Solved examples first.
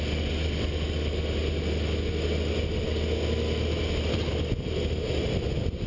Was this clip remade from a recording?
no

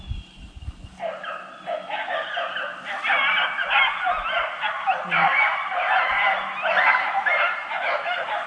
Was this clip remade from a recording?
no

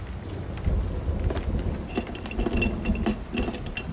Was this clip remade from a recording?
no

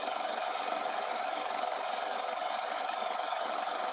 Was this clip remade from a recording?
yes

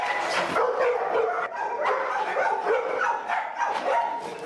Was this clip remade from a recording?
no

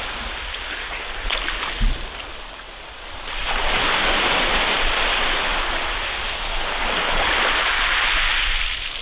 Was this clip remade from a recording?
no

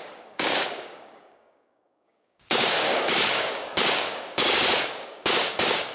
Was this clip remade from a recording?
yes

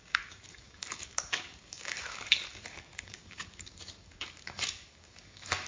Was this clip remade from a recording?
yes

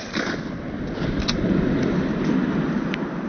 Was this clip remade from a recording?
no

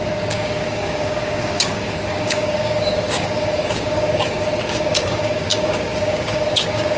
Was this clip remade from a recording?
yes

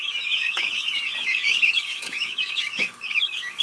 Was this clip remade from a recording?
yes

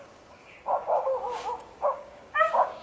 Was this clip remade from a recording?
yes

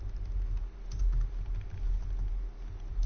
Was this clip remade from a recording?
no